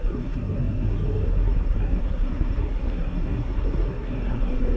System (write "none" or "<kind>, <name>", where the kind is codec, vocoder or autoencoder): codec, SNAC